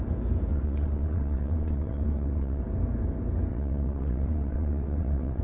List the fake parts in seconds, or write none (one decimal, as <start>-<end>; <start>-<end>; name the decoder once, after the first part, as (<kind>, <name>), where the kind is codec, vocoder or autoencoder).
0.5-2.6 (vocoder, WaveNeXt); 3.5-5.4